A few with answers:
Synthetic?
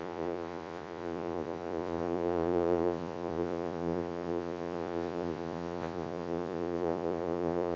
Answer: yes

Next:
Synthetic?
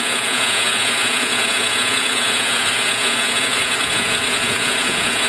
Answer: yes